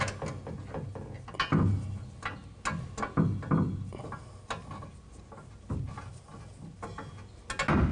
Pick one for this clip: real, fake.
real